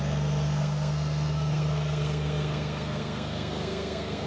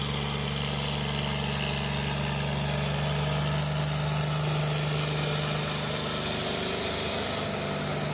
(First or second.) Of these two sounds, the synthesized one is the first